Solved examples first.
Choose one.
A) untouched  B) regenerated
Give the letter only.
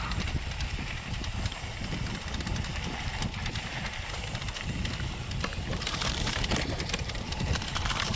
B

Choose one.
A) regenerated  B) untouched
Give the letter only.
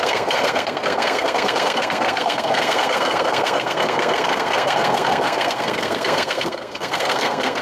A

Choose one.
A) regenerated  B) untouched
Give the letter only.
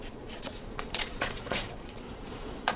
A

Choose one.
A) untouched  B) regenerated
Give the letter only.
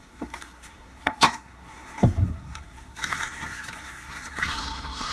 B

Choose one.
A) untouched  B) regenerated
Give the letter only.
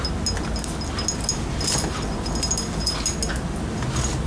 A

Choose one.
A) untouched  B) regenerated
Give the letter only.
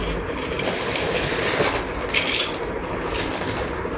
A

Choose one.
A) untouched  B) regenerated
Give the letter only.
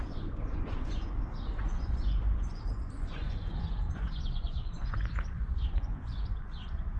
B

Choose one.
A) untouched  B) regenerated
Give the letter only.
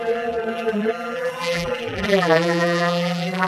B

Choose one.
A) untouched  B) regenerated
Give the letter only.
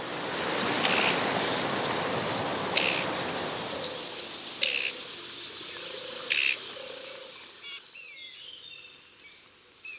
A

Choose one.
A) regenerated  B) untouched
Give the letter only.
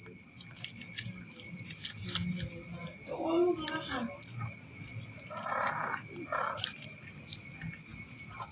B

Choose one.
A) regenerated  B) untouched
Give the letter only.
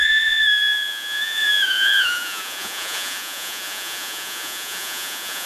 A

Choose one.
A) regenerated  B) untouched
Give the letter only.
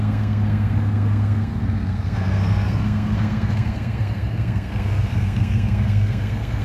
A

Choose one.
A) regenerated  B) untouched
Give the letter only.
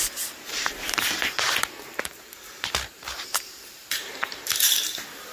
A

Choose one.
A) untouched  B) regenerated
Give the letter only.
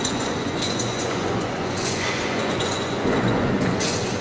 B